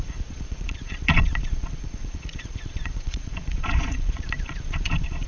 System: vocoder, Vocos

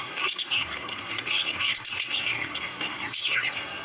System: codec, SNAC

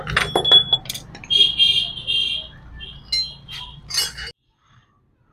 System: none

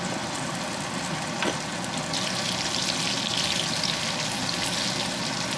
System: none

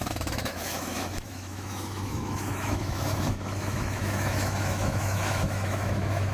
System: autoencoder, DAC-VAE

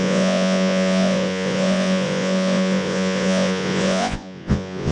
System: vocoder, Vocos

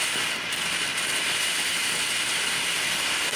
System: none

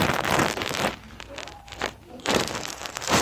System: vocoder, BigVGAN v2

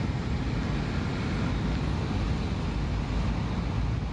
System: none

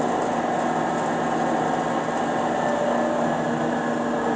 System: none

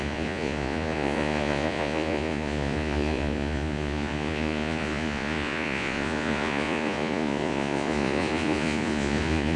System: vocoder, Vocos